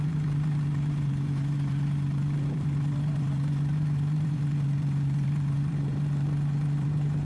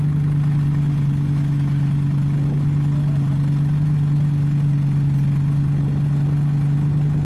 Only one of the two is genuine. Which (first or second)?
second